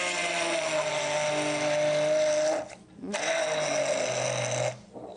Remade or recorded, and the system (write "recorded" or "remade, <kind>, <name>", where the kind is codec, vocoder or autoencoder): recorded